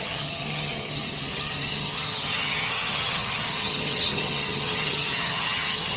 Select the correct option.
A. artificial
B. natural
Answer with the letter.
A